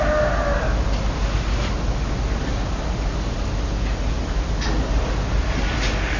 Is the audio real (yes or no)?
yes